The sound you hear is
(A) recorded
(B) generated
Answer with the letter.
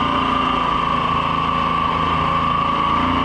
A